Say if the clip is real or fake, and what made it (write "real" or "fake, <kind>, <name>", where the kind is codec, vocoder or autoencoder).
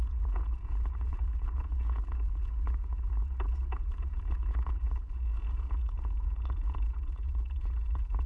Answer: fake, vocoder, Vocos